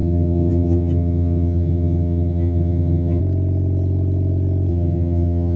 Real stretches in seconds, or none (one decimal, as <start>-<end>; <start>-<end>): 3.2-4.7